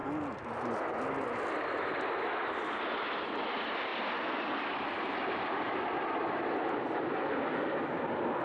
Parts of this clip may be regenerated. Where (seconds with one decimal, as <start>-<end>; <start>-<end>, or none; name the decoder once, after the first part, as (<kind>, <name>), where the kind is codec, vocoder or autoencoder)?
none